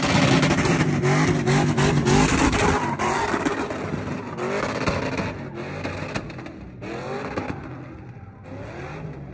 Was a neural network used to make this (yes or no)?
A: no